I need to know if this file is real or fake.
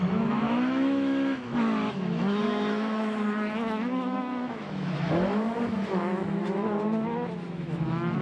fake